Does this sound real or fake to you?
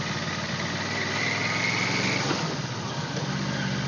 real